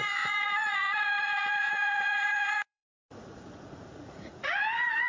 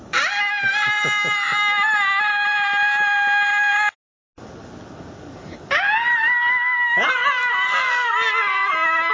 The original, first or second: second